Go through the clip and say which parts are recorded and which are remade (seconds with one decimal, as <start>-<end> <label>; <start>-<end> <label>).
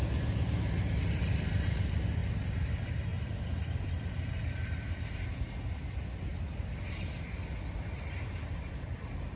0.0-3.1 remade; 3.1-3.9 recorded; 3.9-6.3 remade; 6.3-7.7 recorded; 7.7-9.4 remade